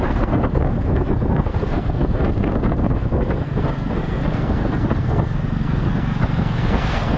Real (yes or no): no